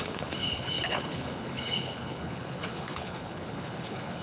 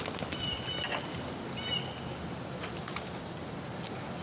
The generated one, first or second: first